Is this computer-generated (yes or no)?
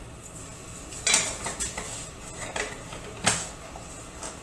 no